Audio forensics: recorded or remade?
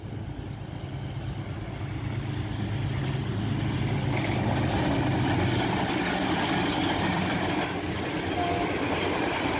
recorded